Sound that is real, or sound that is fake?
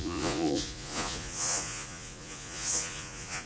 fake